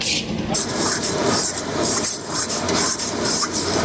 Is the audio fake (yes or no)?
yes